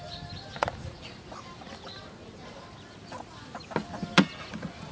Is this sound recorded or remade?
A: recorded